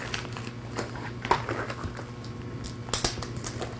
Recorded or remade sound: recorded